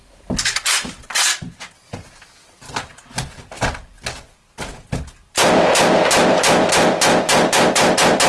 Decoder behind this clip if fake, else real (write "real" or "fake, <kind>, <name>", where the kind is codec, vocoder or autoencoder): real